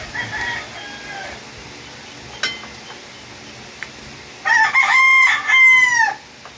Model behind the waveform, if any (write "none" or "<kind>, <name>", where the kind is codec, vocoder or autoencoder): none